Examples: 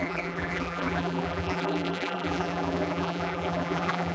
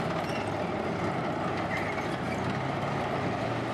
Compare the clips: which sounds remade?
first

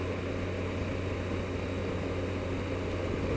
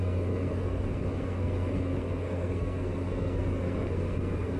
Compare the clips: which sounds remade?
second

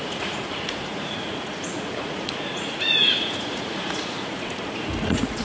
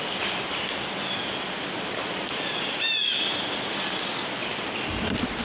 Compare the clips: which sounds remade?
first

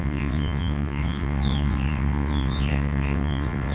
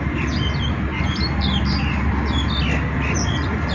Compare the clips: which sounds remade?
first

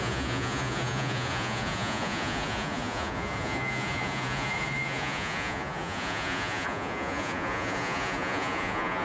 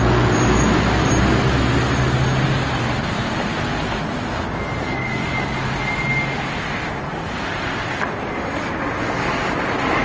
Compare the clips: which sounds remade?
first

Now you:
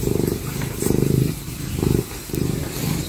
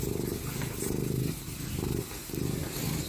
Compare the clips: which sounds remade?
first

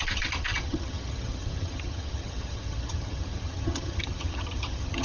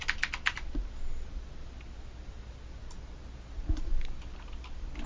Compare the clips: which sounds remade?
first